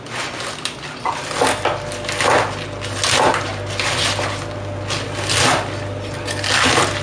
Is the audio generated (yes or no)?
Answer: no